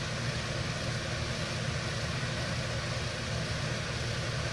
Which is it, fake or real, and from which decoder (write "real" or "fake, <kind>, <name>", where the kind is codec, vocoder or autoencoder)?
real